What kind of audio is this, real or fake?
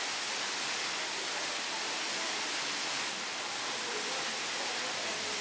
real